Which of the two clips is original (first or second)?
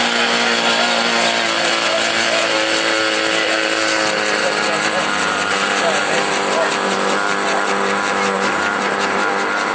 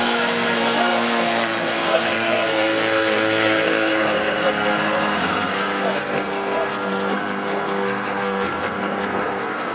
first